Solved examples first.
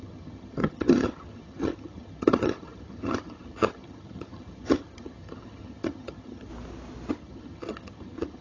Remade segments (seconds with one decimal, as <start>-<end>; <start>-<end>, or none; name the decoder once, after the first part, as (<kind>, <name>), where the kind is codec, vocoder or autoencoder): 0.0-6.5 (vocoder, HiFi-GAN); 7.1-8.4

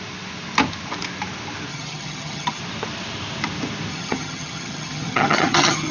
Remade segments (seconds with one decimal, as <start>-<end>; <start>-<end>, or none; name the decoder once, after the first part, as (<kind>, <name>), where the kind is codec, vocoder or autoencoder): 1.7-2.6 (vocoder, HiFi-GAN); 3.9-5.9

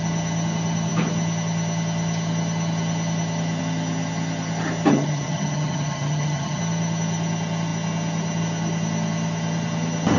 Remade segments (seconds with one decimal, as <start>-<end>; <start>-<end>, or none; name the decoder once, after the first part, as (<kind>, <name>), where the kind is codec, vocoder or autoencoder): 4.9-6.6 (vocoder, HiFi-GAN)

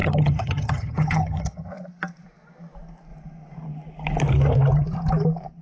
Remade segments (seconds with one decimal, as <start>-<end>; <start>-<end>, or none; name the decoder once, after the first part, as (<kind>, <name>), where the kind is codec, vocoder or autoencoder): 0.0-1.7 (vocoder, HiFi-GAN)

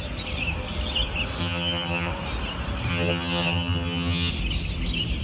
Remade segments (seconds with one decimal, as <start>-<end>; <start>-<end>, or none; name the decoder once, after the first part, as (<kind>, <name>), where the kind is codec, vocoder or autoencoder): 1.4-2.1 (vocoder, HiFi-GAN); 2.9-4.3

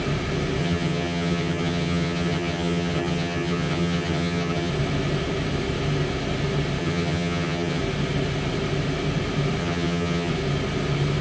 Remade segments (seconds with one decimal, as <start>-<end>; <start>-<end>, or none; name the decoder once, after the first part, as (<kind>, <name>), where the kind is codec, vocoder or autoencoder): 0.6-4.7 (vocoder, HiFi-GAN); 6.8-7.8; 9.6-10.3

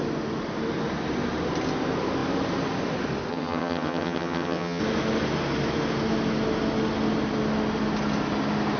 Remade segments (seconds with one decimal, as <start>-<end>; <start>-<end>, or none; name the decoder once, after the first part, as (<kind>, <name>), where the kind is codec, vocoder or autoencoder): 3.3-4.8 (vocoder, HiFi-GAN)

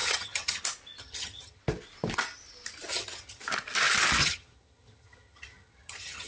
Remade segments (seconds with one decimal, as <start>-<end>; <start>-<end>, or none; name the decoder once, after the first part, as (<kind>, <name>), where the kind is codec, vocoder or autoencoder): 0.0-0.6 (vocoder, HiFi-GAN); 1.0-1.6; 2.9-3.4; 4.2-6.3